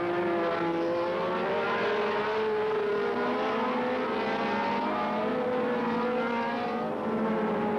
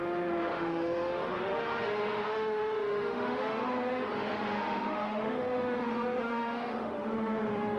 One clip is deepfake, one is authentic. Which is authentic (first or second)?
first